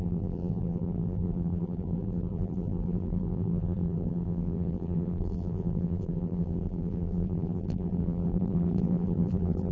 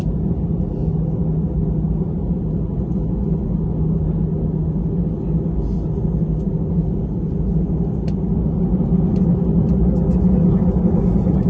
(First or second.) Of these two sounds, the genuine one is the second